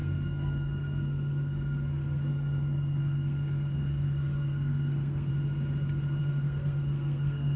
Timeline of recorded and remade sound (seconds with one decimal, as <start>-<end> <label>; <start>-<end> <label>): 0.0-5.3 remade; 5.3-6.2 recorded; 6.2-7.6 remade